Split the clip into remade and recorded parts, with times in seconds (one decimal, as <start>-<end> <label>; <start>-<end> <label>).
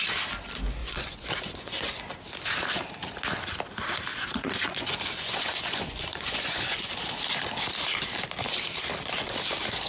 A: 0.0-0.8 recorded; 0.8-1.9 remade; 1.9-4.1 recorded; 4.1-6.9 remade; 6.9-9.9 recorded